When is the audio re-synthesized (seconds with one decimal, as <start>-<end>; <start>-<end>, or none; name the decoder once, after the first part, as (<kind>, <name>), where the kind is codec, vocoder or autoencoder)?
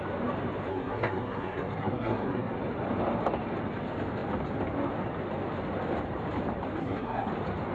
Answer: 0.7-2.5 (codec, SNAC); 6.8-7.3